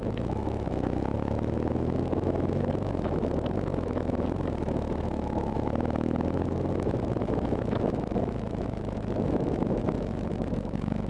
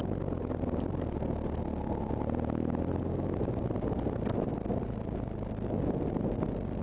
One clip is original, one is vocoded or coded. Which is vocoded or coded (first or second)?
first